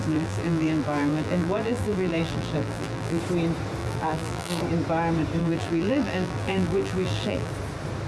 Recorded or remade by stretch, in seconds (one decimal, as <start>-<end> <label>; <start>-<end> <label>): 0.0-3.2 remade; 3.2-3.8 recorded; 3.8-4.6 remade; 4.6-5.4 recorded; 5.4-7.5 remade; 7.5-8.1 recorded